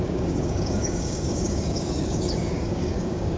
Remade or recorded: remade